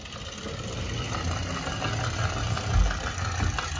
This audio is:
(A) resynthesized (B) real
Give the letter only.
B